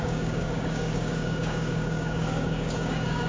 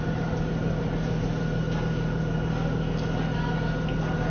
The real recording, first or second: second